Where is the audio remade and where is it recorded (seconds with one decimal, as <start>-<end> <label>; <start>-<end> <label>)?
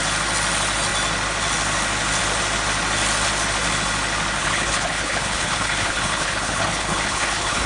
0.0-4.4 recorded; 4.4-7.7 remade